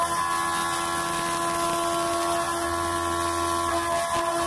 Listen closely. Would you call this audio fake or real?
real